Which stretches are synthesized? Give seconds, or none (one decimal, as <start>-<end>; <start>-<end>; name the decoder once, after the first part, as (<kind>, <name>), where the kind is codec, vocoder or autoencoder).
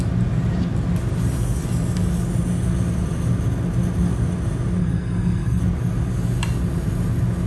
4.8-5.6 (codec, SNAC)